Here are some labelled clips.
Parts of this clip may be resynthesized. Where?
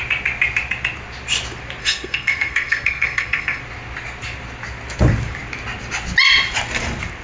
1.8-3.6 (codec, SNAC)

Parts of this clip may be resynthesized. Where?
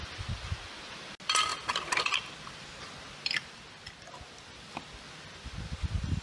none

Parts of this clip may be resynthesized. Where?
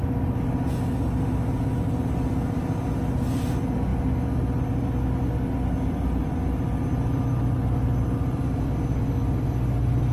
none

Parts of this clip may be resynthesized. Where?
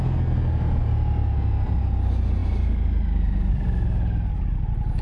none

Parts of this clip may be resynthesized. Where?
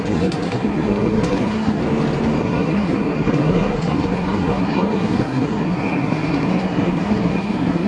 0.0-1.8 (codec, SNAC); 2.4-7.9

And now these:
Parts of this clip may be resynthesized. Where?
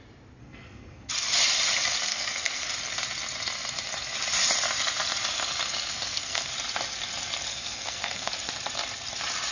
0.4-1.1 (codec, SNAC); 2.1-2.7; 5.9-6.5; 7.5-8.3